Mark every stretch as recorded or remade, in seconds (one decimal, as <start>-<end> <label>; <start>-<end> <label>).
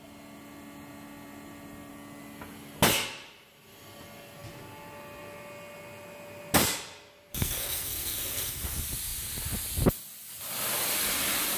0.0-7.3 recorded; 7.3-8.6 remade; 8.6-11.6 recorded